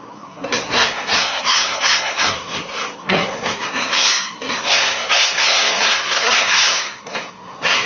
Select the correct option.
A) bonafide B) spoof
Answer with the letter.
B